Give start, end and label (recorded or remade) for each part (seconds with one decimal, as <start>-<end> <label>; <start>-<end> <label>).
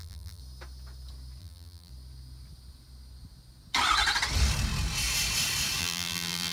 0.0-0.4 remade; 0.4-1.4 recorded; 1.4-1.9 remade; 1.9-5.8 recorded; 5.8-6.5 remade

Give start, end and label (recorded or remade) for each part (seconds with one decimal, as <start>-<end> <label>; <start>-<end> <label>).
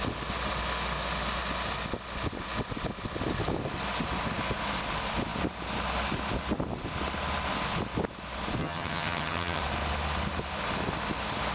0.0-8.6 recorded; 8.6-9.6 remade; 9.6-11.5 recorded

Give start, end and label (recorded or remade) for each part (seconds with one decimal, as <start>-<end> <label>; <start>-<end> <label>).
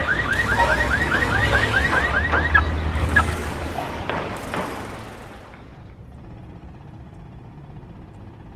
0.0-2.0 remade; 2.0-2.9 recorded; 2.9-4.4 remade; 4.4-8.6 recorded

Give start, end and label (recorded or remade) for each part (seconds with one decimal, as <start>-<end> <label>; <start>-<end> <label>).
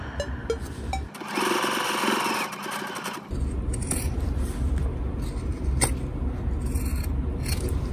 0.0-0.4 recorded; 0.4-5.0 remade; 5.0-6.9 recorded; 6.9-7.9 remade